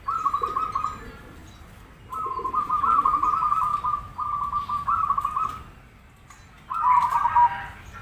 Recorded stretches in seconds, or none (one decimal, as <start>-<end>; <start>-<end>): 0.0-8.0